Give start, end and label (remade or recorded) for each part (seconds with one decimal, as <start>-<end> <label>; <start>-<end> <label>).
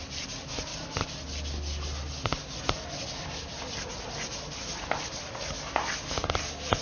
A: 0.0-6.8 recorded